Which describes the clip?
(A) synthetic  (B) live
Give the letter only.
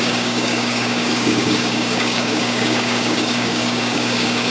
A